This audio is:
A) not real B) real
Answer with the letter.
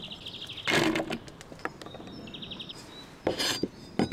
B